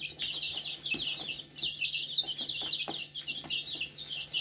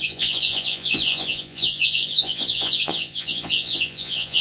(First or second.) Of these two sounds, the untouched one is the first